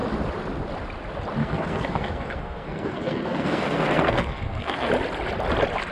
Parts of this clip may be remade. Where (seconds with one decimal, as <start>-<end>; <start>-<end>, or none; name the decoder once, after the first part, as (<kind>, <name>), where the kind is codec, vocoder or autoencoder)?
1.4-4.9 (codec, SNAC)

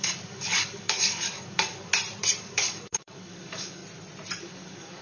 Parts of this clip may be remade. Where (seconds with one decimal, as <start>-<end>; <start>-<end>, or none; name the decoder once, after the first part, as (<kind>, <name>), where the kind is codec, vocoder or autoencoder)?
0.0-1.9 (codec, DAC); 2.4-3.8; 4.4-5.0

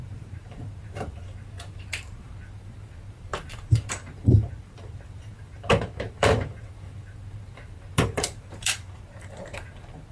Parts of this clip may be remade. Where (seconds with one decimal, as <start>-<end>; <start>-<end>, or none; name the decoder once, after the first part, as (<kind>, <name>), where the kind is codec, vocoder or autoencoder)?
0.0-10.1 (vocoder, BigVGAN v2)